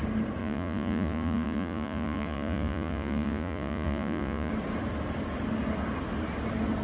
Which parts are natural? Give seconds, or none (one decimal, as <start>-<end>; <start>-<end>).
0.0-0.4; 4.5-6.8